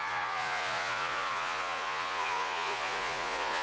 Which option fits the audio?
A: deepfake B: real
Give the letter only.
A